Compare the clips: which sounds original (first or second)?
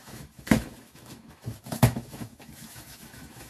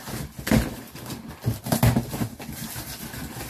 second